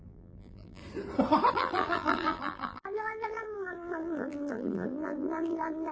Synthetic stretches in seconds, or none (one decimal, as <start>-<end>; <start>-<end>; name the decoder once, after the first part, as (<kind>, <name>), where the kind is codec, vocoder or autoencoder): 0.0-0.8 (vocoder, BigVGAN v2); 1.5-5.9